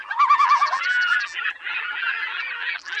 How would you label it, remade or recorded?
remade